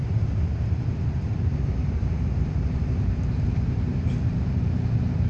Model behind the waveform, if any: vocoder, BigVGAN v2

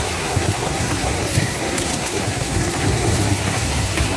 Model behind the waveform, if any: codec, SNAC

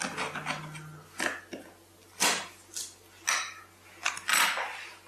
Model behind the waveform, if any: none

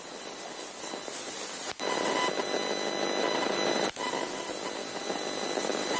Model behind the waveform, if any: none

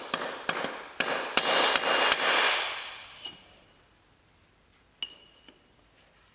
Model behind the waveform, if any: none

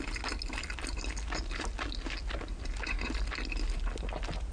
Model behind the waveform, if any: none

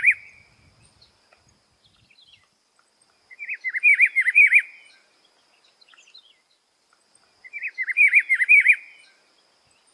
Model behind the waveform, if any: none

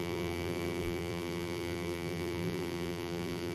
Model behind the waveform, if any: vocoder, BigVGAN v2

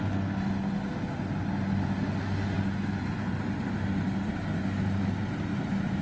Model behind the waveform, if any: none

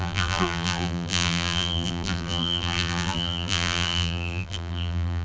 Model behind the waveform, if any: vocoder, BigVGAN v2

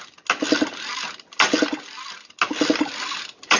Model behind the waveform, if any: none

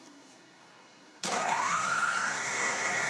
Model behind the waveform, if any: codec, SNAC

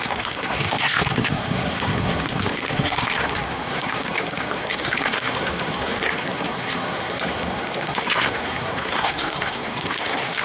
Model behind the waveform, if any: codec, SNAC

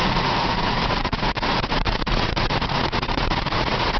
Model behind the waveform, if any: vocoder, Vocos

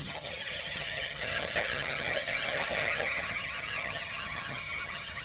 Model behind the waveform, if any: vocoder, HiFi-GAN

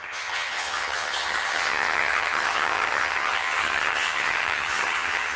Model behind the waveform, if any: vocoder, HiFi-GAN